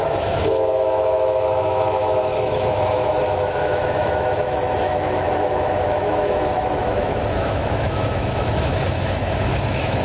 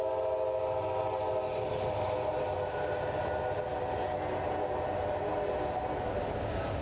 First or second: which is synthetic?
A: first